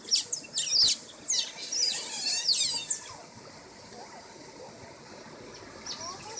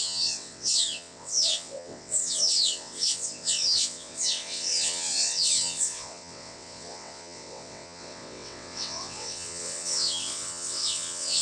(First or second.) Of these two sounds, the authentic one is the first